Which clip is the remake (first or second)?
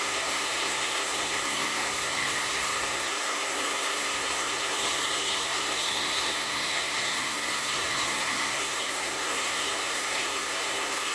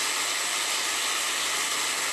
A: first